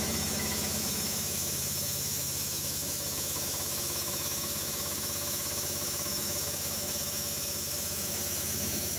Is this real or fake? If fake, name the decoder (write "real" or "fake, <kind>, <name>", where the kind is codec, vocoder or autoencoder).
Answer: fake, autoencoder, DAC-VAE